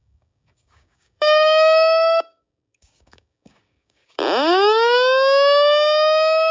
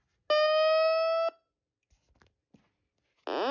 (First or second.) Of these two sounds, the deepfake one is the first